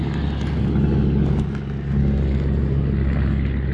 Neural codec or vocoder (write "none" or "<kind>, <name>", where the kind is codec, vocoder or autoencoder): none